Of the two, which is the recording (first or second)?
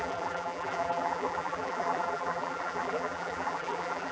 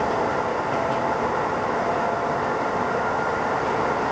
second